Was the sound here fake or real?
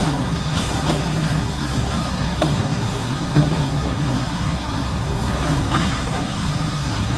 fake